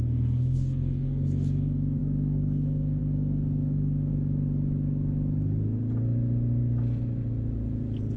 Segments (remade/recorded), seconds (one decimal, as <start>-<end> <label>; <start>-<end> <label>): 0.0-4.1 remade; 4.1-8.2 recorded